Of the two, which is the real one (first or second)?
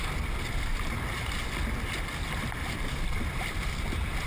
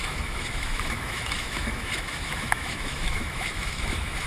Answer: first